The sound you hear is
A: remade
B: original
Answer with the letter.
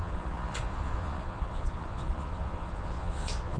A